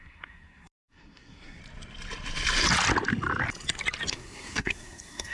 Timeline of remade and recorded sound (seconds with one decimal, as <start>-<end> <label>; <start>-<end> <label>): 0.0-1.6 remade; 1.6-4.1 recorded; 4.1-5.3 remade